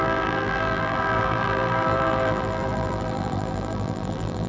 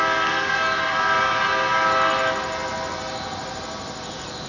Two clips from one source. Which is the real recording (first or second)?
second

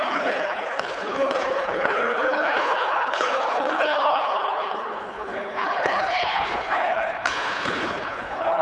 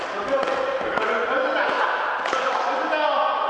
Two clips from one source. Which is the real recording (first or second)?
second